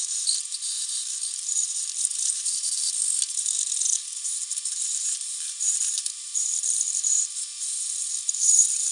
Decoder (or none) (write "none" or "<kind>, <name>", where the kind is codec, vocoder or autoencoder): vocoder, BigVGAN v2